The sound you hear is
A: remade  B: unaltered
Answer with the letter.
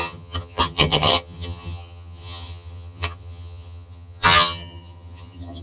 A